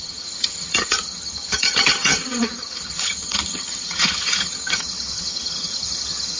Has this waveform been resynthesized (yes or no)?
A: yes